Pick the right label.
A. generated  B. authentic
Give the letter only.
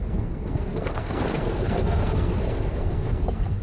A